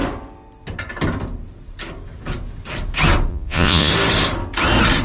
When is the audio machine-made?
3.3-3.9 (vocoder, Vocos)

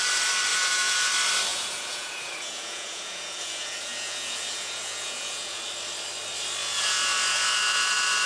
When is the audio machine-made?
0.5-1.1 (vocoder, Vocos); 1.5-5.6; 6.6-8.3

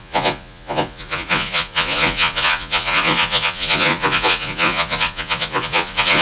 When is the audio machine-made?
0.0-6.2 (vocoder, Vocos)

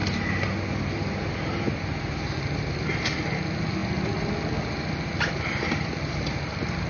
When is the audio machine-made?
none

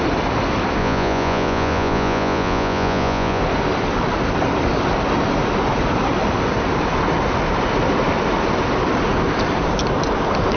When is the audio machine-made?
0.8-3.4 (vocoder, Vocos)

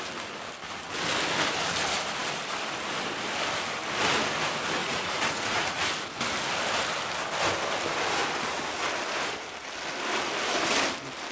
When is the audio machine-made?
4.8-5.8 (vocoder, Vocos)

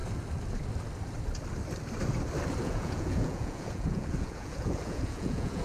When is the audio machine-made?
2.6-5.6 (vocoder, Vocos)

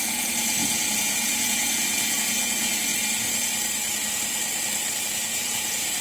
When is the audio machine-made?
0.0-2.9 (vocoder, Vocos); 5.1-6.0